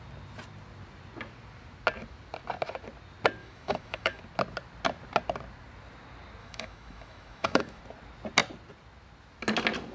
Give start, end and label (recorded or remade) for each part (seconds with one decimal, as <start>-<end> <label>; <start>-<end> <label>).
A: 0.0-3.4 recorded; 3.4-4.2 remade; 4.2-6.4 recorded; 6.4-7.8 remade; 7.8-9.9 recorded